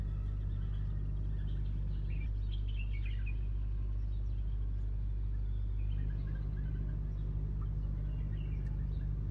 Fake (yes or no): no